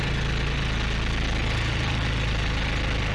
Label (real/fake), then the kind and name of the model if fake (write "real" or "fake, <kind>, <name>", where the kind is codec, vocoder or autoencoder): real